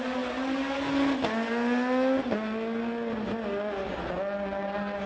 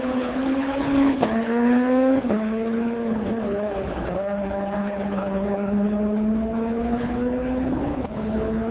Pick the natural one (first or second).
first